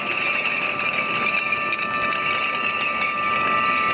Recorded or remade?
recorded